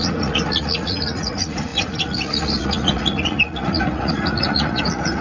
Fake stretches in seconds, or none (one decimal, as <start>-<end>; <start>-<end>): 0.0-5.2